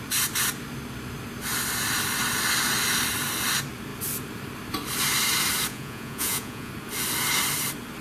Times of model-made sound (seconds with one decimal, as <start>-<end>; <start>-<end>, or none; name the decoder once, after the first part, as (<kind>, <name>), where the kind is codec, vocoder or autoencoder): 5.7-6.7 (vocoder, Vocos)